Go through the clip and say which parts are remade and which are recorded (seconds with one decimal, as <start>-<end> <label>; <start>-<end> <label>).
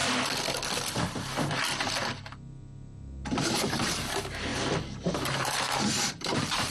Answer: 0.0-3.4 recorded; 3.4-4.5 remade; 4.5-5.1 recorded; 5.1-6.7 remade